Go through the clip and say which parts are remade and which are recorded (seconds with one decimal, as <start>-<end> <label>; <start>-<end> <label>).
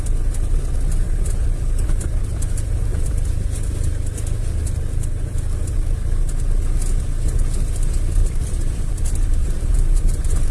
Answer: 0.0-8.2 recorded; 8.2-8.9 remade; 8.9-9.4 recorded; 9.4-10.5 remade